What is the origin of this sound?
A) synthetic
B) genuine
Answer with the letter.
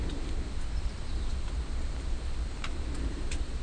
B